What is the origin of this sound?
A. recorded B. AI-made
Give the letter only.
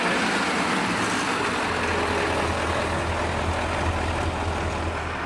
A